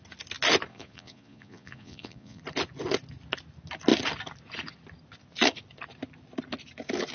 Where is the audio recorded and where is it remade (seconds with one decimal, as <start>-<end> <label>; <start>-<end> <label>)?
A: 0.0-0.7 recorded; 0.7-2.4 remade; 2.4-7.1 recorded